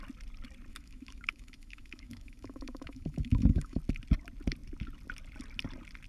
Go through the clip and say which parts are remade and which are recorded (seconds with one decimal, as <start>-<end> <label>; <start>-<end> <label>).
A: 0.0-0.7 recorded; 0.7-3.8 remade; 3.8-6.1 recorded